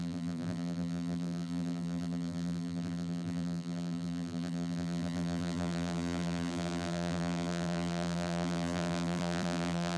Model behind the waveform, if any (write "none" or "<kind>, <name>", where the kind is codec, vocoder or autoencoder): vocoder, BigVGAN v2